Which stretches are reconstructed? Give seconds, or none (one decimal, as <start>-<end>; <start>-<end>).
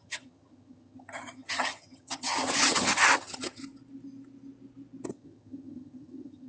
0.0-3.6; 5.1-6.5